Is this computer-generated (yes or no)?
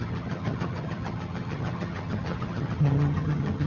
yes